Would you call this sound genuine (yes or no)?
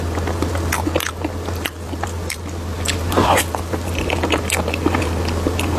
yes